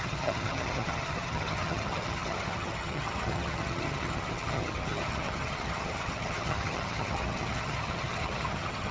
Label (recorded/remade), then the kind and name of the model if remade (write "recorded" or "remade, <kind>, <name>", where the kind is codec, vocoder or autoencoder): remade, vocoder, HiFi-GAN